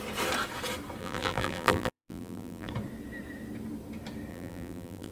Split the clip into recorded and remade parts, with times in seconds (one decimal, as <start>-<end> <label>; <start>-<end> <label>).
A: 0.0-1.0 recorded; 1.0-2.7 remade; 2.7-4.3 recorded; 4.3-5.1 remade